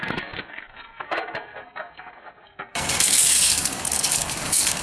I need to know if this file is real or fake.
fake